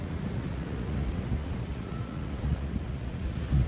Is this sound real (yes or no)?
no